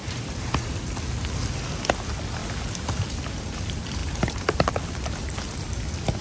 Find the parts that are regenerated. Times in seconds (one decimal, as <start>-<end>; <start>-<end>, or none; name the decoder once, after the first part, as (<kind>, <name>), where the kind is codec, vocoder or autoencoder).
0.0-0.9 (vocoder, BigVGAN v2); 4.0-4.7